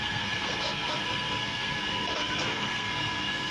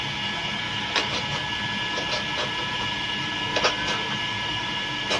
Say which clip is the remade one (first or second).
first